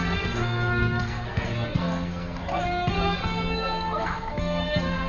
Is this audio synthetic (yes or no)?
yes